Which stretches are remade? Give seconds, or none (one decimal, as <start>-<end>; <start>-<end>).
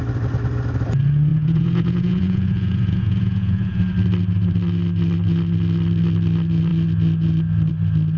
1.3-3.8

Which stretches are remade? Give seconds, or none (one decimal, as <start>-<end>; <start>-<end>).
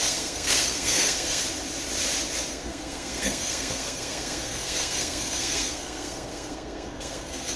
0.0-1.4; 2.5-7.6